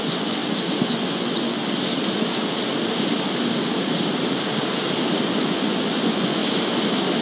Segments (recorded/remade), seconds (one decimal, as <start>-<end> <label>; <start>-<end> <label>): 0.0-0.4 remade; 0.4-0.9 recorded; 0.9-1.6 remade; 1.6-5.3 recorded; 5.3-6.4 remade; 6.4-7.2 recorded